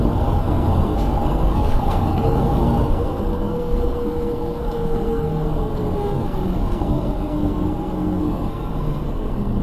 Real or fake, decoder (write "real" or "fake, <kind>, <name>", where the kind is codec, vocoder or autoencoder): fake, codec, SNAC